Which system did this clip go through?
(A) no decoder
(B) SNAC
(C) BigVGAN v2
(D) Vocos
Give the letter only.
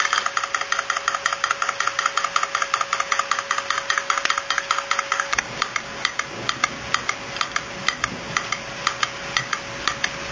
A